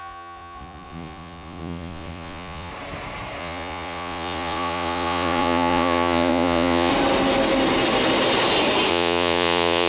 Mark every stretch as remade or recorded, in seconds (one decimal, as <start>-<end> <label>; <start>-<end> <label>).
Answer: 0.0-2.7 remade; 2.7-3.4 recorded; 3.4-6.9 remade; 6.9-8.9 recorded; 8.9-9.9 remade